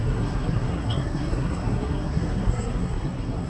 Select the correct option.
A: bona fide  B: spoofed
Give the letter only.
B